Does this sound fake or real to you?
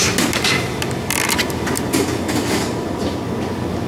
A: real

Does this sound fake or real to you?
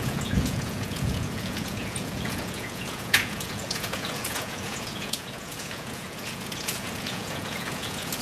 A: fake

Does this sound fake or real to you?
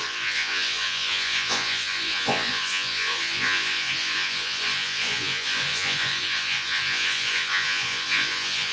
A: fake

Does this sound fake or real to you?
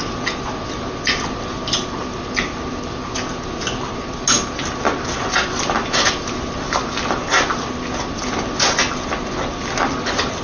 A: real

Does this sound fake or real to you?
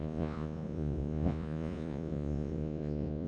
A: fake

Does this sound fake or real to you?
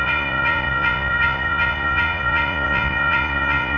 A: fake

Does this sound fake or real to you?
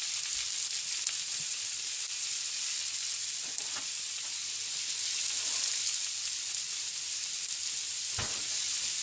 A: real